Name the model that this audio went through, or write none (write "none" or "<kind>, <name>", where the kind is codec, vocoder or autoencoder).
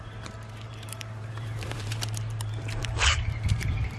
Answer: vocoder, BigVGAN v2